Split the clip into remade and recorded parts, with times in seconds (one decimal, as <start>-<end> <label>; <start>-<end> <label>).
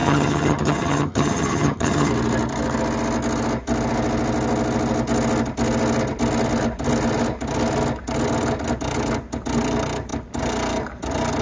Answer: 0.0-2.1 remade; 2.1-11.4 recorded